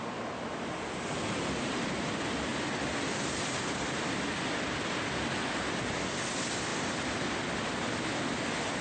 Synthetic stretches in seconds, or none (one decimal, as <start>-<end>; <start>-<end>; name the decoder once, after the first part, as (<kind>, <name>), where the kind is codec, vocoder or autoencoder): none